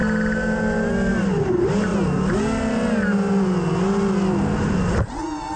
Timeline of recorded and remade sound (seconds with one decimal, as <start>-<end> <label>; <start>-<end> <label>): 0.0-1.1 recorded; 1.1-1.9 remade; 1.9-4.7 recorded; 4.7-5.6 remade